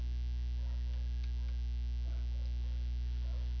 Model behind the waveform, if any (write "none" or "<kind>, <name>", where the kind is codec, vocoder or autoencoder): none